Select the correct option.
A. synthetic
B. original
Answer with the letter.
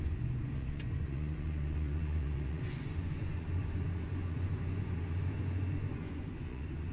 A